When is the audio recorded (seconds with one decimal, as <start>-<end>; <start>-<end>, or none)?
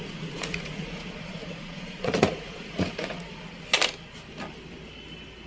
3.3-5.5